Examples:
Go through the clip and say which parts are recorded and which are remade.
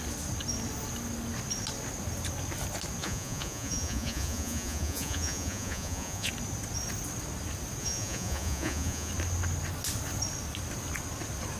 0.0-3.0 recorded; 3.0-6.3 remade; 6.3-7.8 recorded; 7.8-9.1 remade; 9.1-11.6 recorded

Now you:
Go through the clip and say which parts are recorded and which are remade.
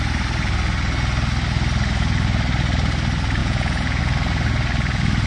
0.0-3.4 recorded; 3.4-4.0 remade; 4.0-5.3 recorded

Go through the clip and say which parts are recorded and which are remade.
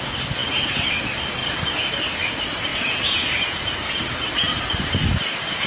0.0-2.7 recorded; 2.7-4.0 remade; 4.0-5.7 recorded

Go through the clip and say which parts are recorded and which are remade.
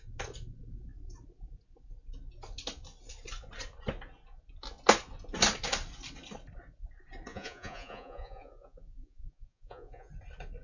0.0-7.3 recorded; 7.3-10.1 remade; 10.1-10.6 recorded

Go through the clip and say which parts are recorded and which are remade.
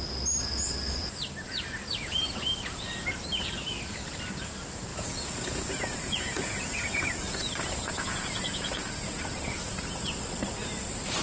0.0-4.9 recorded; 4.9-10.0 remade; 10.0-11.2 recorded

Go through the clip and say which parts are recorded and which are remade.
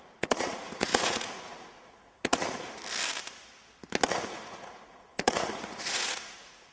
0.0-2.8 remade; 2.8-4.1 recorded; 4.1-6.7 remade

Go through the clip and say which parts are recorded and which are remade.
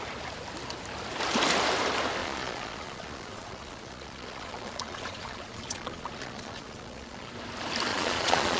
0.0-2.2 recorded; 2.2-7.3 remade; 7.3-7.9 recorded; 7.9-8.6 remade